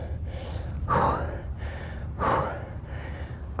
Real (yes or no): yes